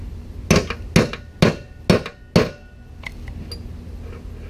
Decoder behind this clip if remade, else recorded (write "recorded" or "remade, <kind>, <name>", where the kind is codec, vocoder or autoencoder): recorded